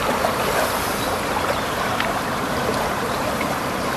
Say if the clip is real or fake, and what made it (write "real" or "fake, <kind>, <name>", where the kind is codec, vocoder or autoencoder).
fake, vocoder, BigVGAN v2